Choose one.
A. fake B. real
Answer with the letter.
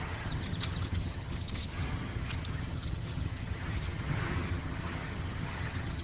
A